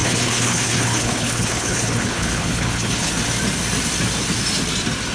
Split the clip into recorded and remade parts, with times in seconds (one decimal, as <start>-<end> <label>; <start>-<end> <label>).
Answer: 0.0-3.1 remade; 3.1-5.1 recorded